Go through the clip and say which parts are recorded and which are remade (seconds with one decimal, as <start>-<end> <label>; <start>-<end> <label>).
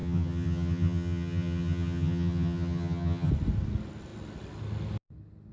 0.0-3.3 remade; 3.3-5.5 recorded